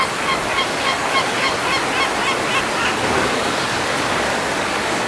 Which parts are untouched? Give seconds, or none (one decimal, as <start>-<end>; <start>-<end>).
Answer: 1.6-2.8